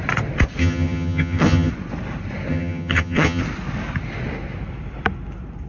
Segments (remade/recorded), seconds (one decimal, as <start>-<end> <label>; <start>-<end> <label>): 0.0-0.6 recorded; 0.6-1.7 remade; 1.7-2.5 recorded; 2.5-3.4 remade; 3.4-5.7 recorded